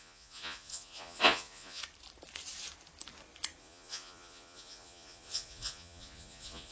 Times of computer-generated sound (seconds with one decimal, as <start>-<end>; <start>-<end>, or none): 0.0-1.8; 3.6-6.7